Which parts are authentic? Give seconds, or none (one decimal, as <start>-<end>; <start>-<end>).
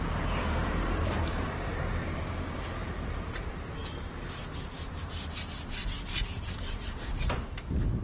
3.8-4.7; 5.8-6.4